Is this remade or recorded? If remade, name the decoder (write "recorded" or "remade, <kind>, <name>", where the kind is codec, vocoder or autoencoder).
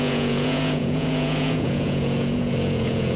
remade, vocoder, Vocos